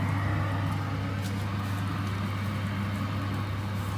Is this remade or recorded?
recorded